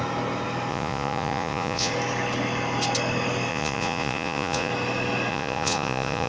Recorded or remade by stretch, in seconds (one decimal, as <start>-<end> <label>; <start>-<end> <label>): 0.0-0.7 recorded; 0.7-1.9 remade; 1.9-3.5 recorded; 3.5-4.7 remade; 4.7-5.3 recorded; 5.3-6.3 remade